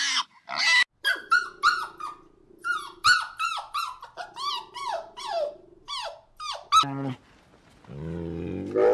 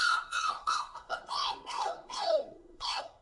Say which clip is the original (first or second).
first